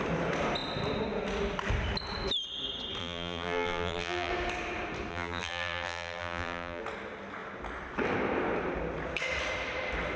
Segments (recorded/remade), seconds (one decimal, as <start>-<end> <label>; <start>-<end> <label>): 0.0-3.0 recorded; 3.0-4.3 remade; 4.3-5.1 recorded; 5.1-6.8 remade; 6.8-10.2 recorded